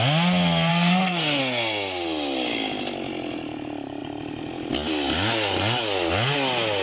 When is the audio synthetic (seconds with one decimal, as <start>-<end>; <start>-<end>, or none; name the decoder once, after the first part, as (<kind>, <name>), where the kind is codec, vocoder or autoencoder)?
0.7-1.4 (codec, SNAC)